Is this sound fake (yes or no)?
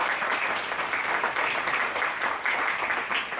no